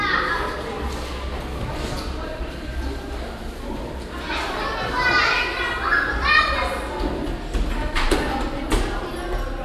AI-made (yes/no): no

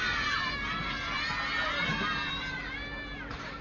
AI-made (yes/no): no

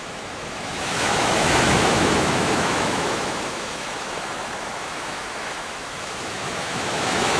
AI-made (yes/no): yes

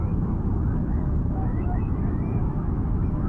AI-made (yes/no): yes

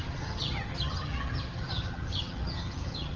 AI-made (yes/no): yes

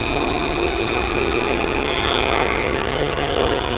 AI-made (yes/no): yes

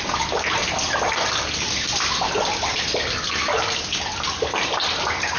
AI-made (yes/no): no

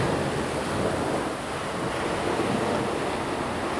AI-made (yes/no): no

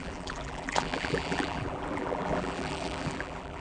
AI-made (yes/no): yes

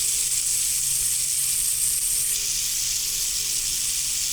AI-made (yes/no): no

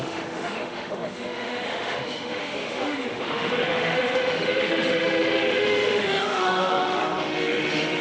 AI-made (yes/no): yes